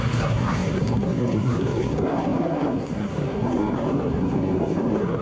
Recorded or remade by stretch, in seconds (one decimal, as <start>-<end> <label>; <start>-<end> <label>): 0.0-5.2 remade